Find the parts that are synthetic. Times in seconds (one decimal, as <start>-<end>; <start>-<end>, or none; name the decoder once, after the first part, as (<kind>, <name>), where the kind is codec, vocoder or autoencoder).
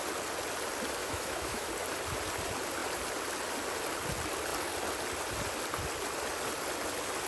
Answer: 1.0-1.7 (autoencoder, DAC-VAE)